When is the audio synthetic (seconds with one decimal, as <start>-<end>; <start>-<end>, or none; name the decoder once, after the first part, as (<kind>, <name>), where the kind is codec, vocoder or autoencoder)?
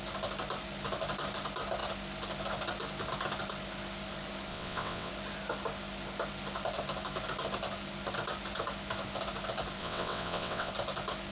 4.5-5.1 (vocoder, WaveNeXt); 9.8-10.7